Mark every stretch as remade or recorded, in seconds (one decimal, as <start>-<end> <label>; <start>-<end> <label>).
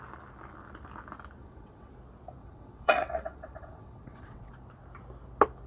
0.0-1.4 recorded; 1.4-1.9 remade; 1.9-2.4 recorded; 2.4-4.5 remade; 4.5-5.7 recorded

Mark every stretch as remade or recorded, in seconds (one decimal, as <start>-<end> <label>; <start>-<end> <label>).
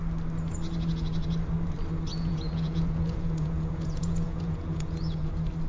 0.0-2.1 recorded; 2.1-5.3 remade; 5.3-5.7 recorded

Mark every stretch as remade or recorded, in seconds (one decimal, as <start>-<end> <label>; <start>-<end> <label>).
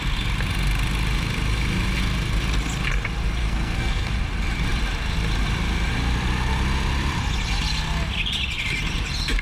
0.0-3.4 recorded; 3.4-4.1 remade; 4.1-9.4 recorded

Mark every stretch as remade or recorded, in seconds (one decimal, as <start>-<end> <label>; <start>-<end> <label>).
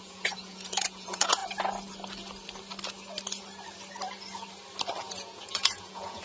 0.0-1.4 remade; 1.4-5.1 recorded; 5.1-6.2 remade